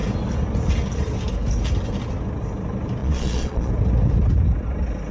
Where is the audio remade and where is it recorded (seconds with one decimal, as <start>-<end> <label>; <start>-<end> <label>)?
0.0-3.0 recorded; 3.0-3.7 remade; 3.7-5.1 recorded